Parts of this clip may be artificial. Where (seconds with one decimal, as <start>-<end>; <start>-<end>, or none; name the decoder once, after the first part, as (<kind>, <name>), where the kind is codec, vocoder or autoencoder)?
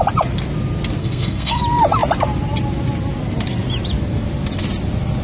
1.0-1.6 (codec, SNAC)